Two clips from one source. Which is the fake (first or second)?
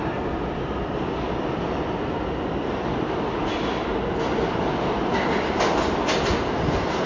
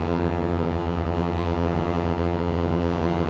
second